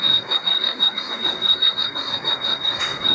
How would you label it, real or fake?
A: fake